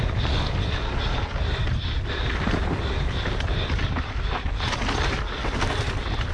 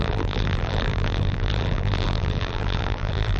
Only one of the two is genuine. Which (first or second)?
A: first